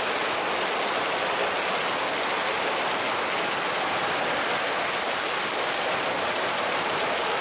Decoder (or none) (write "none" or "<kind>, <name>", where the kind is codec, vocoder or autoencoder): none